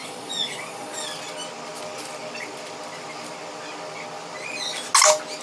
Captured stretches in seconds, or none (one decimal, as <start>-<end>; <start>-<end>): 1.0-5.4